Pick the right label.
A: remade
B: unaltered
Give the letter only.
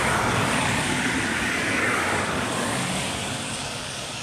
A